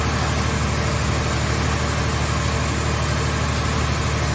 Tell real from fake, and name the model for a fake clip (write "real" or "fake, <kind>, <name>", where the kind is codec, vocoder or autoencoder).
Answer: real